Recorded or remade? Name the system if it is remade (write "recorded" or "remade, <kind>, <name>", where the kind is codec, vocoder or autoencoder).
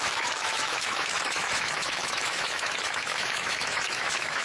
remade, autoencoder, DAC-VAE